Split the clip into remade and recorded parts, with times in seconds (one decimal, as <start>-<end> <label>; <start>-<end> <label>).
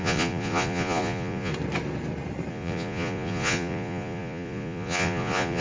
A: 0.0-1.5 remade; 1.5-2.5 recorded; 2.5-5.6 remade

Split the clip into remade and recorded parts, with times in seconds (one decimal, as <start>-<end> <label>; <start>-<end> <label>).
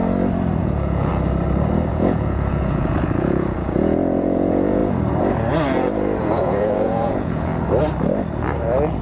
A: 0.0-0.6 recorded; 0.6-1.1 remade; 1.1-1.9 recorded; 1.9-4.8 remade; 4.8-6.2 recorded; 6.2-7.5 remade; 7.5-9.0 recorded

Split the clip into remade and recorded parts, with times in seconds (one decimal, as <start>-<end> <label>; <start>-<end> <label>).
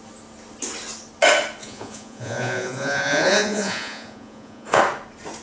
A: 0.0-1.6 recorded; 1.6-4.8 remade; 4.8-5.4 recorded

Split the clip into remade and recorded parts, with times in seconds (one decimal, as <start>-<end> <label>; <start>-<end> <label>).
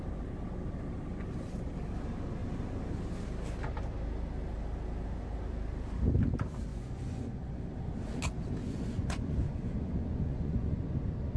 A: 0.0-6.7 recorded; 6.7-7.6 remade; 7.6-8.6 recorded; 8.6-10.8 remade; 10.8-11.4 recorded